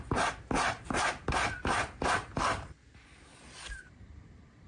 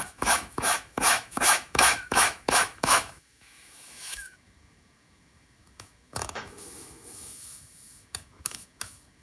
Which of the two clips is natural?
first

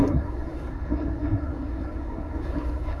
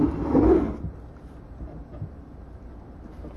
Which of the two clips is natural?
second